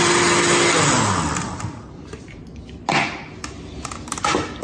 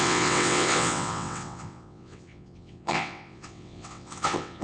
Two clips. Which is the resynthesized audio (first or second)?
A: second